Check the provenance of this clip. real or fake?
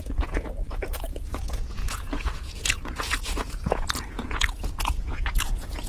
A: fake